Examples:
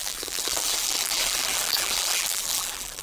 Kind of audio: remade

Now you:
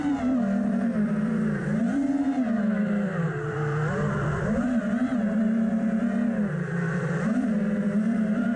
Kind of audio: remade